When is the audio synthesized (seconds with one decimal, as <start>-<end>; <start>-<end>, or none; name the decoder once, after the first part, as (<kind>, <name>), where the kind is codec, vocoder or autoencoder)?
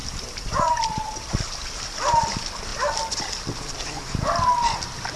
none